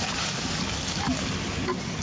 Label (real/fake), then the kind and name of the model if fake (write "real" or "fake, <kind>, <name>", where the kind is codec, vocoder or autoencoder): real